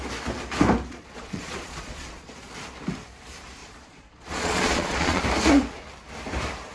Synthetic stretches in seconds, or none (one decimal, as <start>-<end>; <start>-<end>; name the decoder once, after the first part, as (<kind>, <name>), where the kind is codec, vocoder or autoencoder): 0.9-2.5 (vocoder, Vocos); 3.6-5.2